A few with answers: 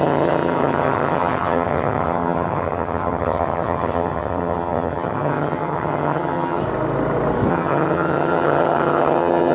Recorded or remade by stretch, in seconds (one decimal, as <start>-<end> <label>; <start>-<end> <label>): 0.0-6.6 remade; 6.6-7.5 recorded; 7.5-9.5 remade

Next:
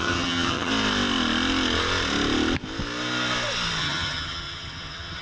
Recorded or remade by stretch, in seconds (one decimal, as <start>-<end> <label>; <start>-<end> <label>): 0.0-0.7 remade; 0.7-3.8 recorded; 3.8-5.2 remade

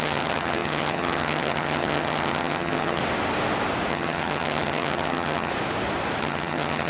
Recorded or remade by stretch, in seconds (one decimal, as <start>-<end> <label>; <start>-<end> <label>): 0.0-3.0 remade; 3.0-3.9 recorded; 3.9-5.5 remade; 5.5-6.2 recorded; 6.2-6.9 remade